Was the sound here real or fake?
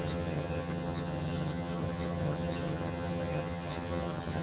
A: fake